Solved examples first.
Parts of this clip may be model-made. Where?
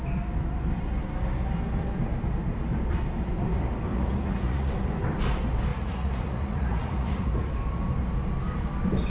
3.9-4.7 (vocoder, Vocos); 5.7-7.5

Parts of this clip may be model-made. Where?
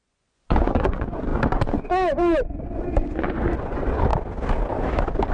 0.0-4.1 (vocoder, Vocos)